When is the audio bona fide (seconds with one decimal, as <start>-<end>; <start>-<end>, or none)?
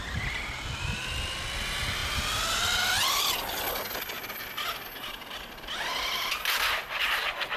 0.0-7.6